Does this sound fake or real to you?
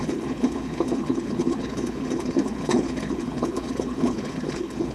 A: fake